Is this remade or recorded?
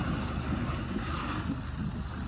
recorded